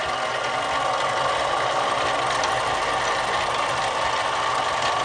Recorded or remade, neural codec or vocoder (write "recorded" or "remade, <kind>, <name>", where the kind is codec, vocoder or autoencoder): recorded